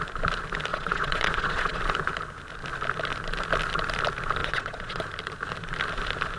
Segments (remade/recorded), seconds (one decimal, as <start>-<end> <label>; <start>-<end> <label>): 0.0-0.7 recorded; 0.7-1.8 remade; 1.8-4.4 recorded; 4.4-5.0 remade; 5.0-6.4 recorded